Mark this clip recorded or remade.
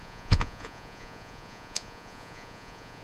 remade